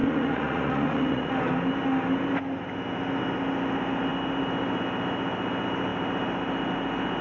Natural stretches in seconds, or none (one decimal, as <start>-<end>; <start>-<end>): 1.3-7.2